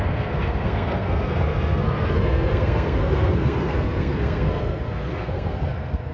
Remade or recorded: remade